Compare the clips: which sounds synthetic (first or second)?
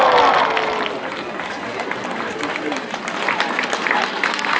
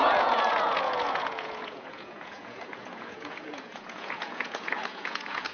second